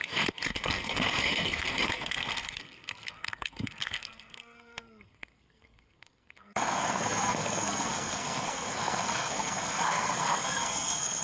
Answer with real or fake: fake